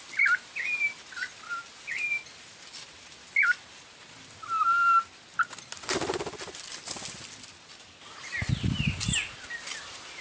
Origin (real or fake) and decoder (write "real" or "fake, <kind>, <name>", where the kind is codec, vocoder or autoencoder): real